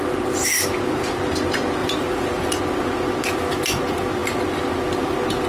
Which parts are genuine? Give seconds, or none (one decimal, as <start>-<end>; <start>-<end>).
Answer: 0.0-1.8; 2.6-5.5